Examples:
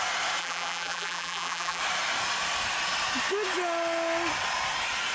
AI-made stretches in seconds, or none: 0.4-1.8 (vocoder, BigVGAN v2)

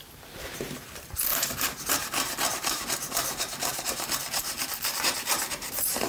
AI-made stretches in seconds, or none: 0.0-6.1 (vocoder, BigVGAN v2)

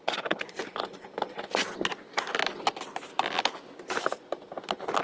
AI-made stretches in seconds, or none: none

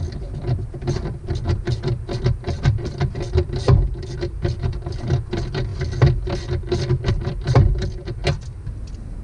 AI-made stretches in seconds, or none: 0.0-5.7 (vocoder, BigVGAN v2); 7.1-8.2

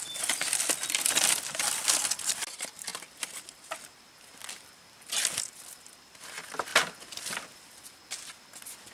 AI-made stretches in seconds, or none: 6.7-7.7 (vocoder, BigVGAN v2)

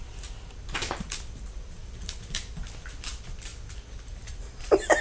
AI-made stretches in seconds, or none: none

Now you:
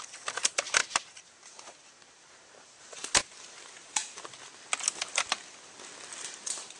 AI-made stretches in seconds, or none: 0.0-4.0 (vocoder, BigVGAN v2); 6.2-6.8